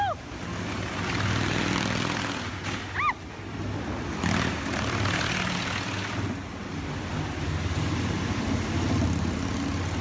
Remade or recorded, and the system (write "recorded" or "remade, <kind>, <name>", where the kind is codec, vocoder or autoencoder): recorded